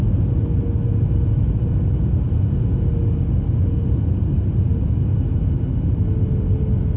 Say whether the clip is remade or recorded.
recorded